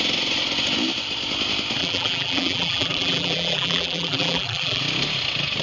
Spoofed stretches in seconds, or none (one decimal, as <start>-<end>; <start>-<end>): 1.8-4.8